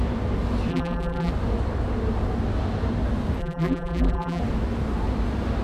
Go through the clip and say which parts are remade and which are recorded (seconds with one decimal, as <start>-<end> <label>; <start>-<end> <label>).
0.0-0.7 recorded; 0.7-1.3 remade; 1.3-3.4 recorded; 3.4-4.4 remade; 4.4-5.6 recorded